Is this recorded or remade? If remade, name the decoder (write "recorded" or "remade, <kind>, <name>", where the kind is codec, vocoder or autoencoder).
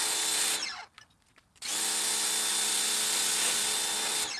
recorded